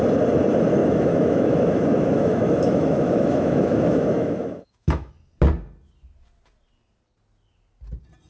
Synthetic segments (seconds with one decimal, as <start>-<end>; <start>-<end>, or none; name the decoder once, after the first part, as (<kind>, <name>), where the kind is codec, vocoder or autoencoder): 0.8-5.1 (autoencoder, DAC-VAE)